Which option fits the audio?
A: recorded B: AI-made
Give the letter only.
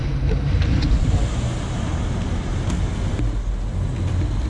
A